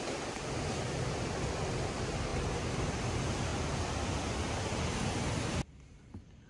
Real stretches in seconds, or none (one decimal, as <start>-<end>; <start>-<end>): 0.0-6.5